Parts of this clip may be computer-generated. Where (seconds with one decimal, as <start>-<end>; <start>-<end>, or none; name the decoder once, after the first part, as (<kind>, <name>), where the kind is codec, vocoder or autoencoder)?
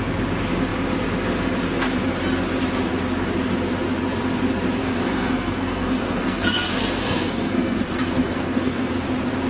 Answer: 4.8-8.9 (codec, SNAC)